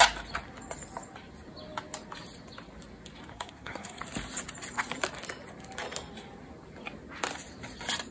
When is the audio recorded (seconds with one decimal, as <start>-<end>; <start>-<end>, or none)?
0.0-3.3; 4.0-8.1